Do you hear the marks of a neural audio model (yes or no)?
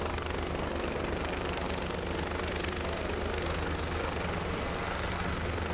no